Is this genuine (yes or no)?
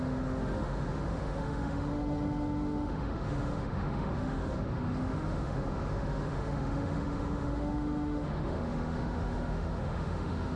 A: no